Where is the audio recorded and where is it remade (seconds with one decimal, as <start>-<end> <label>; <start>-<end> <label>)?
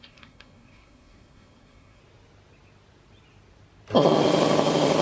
0.0-2.0 remade; 2.0-5.0 recorded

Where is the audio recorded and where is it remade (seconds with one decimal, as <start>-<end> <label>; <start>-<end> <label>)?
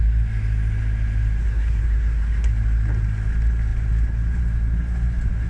0.0-1.4 recorded; 1.4-2.5 remade; 2.5-5.5 recorded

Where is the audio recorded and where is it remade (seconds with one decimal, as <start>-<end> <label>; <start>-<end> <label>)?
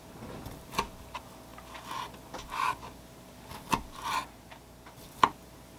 0.0-4.2 recorded; 4.2-5.0 remade; 5.0-5.8 recorded